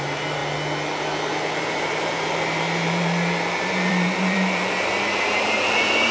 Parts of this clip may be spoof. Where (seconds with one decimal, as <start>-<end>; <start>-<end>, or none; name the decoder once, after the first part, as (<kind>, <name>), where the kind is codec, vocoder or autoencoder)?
0.0-0.4 (vocoder, BigVGAN v2); 1.6-6.1